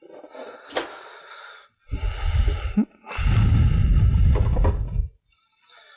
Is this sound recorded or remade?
recorded